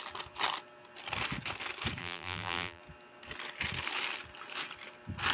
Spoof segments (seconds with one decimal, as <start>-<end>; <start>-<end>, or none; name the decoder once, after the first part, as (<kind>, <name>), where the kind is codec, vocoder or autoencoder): 2.0-2.8 (vocoder, BigVGAN v2)